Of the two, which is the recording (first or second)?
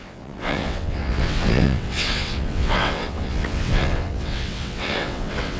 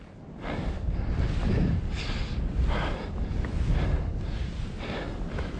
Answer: second